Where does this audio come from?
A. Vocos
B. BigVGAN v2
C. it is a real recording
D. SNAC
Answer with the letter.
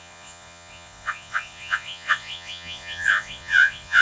A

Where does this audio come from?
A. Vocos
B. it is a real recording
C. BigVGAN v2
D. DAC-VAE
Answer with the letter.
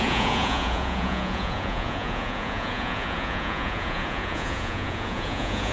A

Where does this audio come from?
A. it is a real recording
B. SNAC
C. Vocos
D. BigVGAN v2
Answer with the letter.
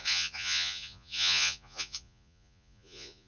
C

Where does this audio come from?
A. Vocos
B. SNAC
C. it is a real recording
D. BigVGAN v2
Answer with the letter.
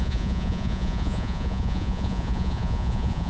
A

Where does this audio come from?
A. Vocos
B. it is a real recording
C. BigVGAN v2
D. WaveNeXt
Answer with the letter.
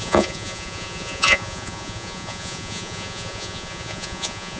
A